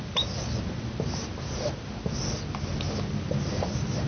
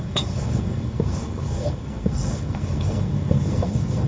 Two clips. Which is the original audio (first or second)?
first